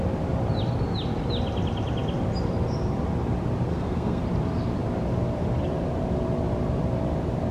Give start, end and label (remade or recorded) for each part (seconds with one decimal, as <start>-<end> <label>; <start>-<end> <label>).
0.0-3.7 recorded; 3.7-4.2 remade; 4.2-7.5 recorded